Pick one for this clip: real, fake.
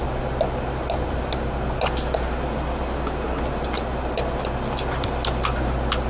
real